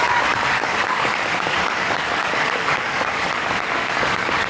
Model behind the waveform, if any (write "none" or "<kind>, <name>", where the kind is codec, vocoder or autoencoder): codec, DAC